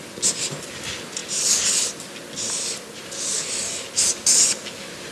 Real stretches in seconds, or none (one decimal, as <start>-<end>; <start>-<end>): 0.0-5.1